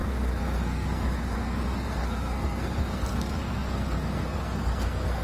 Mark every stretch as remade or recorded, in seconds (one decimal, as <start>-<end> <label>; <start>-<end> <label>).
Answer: 0.0-5.2 remade